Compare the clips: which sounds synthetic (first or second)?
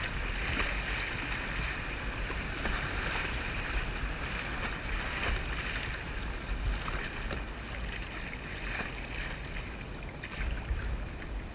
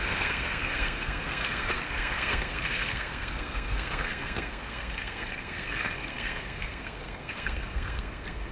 second